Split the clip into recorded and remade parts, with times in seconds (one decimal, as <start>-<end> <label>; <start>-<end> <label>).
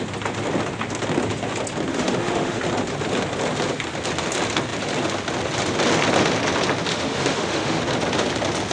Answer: 0.0-1.9 recorded; 1.9-2.6 remade; 2.6-6.9 recorded; 6.9-7.8 remade; 7.8-8.7 recorded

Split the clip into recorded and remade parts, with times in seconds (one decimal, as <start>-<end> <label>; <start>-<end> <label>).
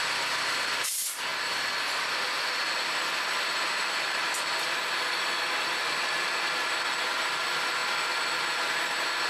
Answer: 0.0-9.3 recorded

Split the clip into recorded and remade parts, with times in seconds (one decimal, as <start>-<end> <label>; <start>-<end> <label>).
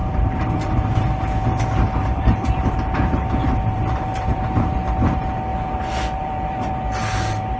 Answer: 0.0-0.9 remade; 0.9-2.0 recorded; 2.0-4.4 remade; 4.4-5.5 recorded; 5.5-6.7 remade; 6.7-7.6 recorded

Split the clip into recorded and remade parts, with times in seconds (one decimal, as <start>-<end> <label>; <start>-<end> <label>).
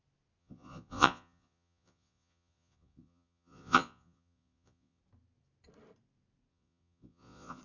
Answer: 0.0-0.4 recorded; 0.4-5.0 remade; 5.0-6.5 recorded; 6.5-7.6 remade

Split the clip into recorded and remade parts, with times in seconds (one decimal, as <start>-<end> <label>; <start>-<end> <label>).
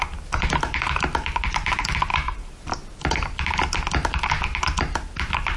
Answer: 0.0-2.1 recorded; 2.1-2.7 remade; 2.7-5.6 recorded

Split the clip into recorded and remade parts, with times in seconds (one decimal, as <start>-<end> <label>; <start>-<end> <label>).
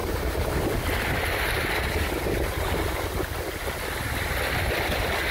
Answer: 0.0-0.5 remade; 0.5-5.3 recorded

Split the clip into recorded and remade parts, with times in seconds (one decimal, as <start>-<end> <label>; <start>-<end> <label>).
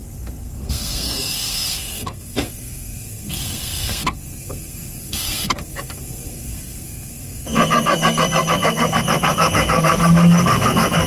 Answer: 0.0-11.1 remade